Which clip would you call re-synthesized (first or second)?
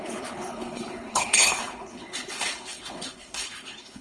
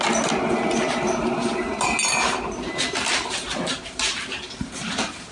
first